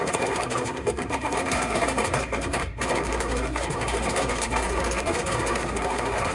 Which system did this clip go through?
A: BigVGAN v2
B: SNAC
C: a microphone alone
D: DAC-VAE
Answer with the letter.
B